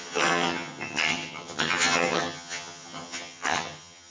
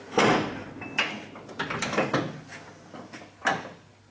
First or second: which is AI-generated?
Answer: first